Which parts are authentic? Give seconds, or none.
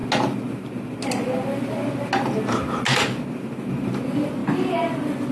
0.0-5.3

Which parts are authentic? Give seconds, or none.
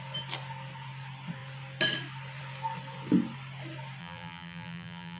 0.0-4.0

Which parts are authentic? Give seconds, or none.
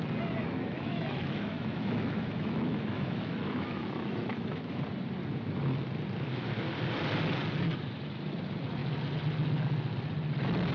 0.0-0.4; 4.8-10.7